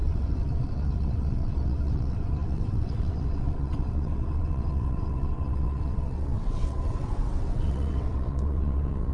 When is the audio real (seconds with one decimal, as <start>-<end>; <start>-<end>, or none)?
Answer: none